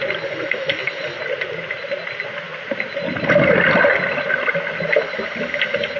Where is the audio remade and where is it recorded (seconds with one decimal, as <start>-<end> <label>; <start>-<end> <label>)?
0.0-6.0 recorded